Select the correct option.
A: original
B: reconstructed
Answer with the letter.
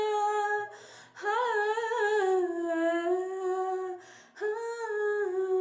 A